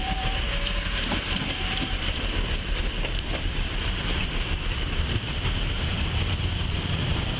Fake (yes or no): yes